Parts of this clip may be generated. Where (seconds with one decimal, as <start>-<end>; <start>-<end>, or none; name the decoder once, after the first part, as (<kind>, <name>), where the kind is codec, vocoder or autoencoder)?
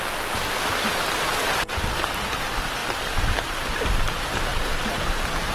1.3-2.4 (vocoder, BigVGAN v2); 2.8-3.6; 4.5-5.5